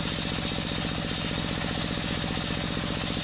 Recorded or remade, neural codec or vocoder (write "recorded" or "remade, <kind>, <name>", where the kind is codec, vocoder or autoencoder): recorded